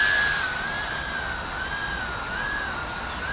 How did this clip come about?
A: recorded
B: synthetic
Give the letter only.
A